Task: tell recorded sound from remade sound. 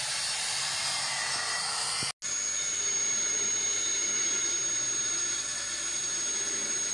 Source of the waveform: recorded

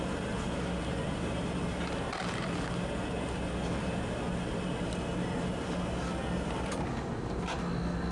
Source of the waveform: recorded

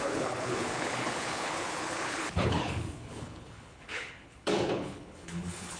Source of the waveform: remade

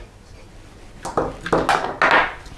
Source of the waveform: recorded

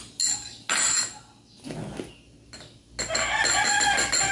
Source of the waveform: recorded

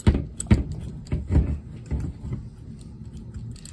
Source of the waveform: recorded